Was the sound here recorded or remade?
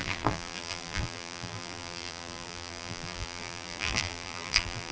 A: remade